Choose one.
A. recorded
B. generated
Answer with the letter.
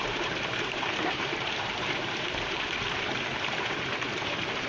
B